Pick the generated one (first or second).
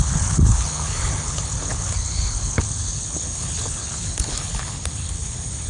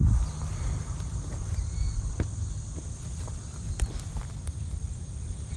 first